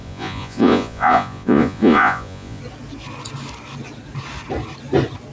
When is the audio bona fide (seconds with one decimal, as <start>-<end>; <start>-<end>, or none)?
2.6-5.3